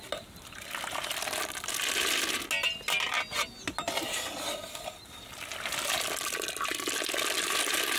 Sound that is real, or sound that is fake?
real